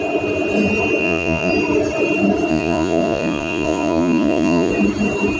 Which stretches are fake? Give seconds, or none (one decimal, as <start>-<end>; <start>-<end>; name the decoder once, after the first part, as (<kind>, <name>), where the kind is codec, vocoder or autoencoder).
1.0-1.5 (vocoder, Vocos); 2.5-4.7